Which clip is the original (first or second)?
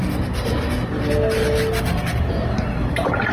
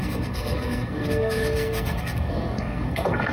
first